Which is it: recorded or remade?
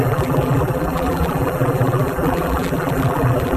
remade